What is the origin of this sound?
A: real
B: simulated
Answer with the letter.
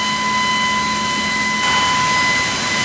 A